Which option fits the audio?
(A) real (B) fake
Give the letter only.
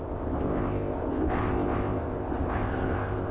B